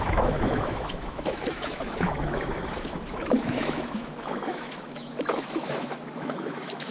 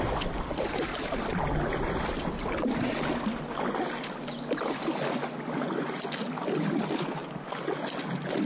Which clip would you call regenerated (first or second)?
first